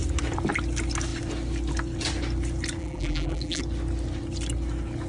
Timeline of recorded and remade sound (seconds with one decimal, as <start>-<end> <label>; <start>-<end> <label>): 0.0-2.8 recorded; 2.8-3.6 remade; 3.6-5.1 recorded